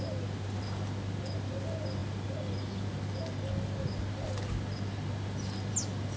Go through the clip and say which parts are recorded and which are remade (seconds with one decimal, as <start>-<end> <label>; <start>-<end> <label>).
0.0-6.2 recorded